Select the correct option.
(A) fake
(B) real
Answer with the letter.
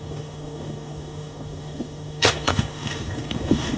A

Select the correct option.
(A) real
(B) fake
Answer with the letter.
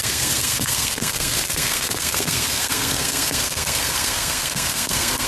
B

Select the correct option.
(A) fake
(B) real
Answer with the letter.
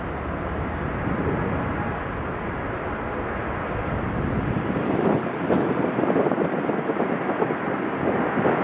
B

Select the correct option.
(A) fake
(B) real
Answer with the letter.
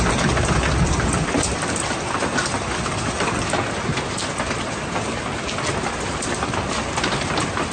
B